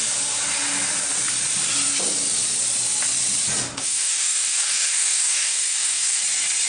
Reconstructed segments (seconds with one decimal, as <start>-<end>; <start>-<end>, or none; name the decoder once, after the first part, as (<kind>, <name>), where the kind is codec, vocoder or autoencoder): 3.8-6.2 (codec, DAC)